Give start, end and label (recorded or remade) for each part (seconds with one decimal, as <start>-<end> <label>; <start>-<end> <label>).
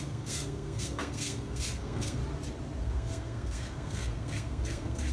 0.0-2.2 remade; 2.2-2.8 recorded; 2.8-5.1 remade